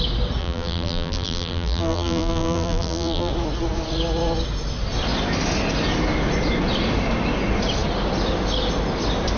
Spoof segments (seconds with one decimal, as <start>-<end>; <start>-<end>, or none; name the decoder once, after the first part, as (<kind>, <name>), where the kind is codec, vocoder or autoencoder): 0.4-3.3 (vocoder, BigVGAN v2)